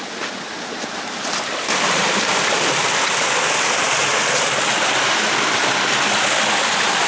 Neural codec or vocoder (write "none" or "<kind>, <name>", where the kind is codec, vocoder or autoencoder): none